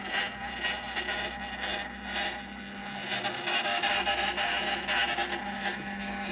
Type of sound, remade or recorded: recorded